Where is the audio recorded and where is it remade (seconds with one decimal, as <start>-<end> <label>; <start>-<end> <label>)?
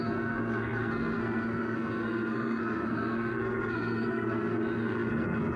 0.0-5.6 remade